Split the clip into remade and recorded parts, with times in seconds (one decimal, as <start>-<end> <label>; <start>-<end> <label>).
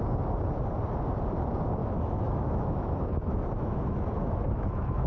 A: 0.0-1.8 recorded; 1.8-5.1 remade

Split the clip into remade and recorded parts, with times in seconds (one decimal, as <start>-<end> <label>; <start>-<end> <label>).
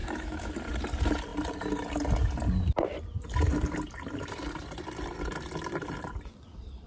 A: 0.0-0.5 remade; 0.5-6.9 recorded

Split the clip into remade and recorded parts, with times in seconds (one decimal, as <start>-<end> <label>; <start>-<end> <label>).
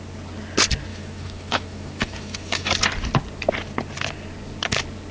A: 0.0-0.9 recorded; 0.9-2.7 remade; 2.7-5.1 recorded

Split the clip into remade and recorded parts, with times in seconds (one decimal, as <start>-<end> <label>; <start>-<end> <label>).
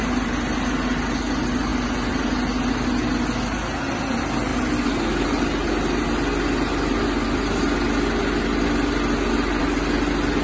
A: 0.0-10.4 recorded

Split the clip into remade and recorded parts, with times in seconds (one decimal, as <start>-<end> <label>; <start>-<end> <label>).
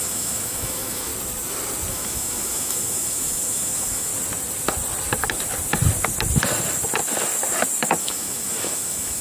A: 0.0-1.1 remade; 1.1-1.9 recorded; 1.9-4.1 remade; 4.1-8.0 recorded; 8.0-9.2 remade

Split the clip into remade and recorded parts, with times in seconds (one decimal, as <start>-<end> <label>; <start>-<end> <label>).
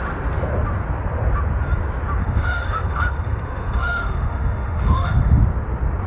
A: 0.0-2.2 recorded; 2.2-5.4 remade; 5.4-6.1 recorded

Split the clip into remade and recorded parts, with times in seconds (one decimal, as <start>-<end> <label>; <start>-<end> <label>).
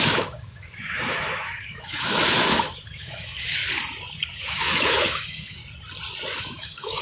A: 0.0-3.6 remade; 3.6-4.3 recorded; 4.3-5.6 remade; 5.6-6.4 recorded; 6.4-7.0 remade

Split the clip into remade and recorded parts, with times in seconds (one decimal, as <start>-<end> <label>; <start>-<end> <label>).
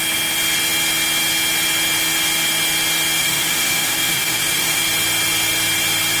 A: 0.0-3.2 recorded; 3.2-4.8 remade; 4.8-6.2 recorded